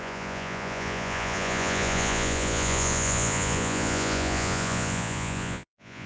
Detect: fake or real fake